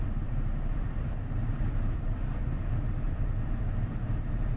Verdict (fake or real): fake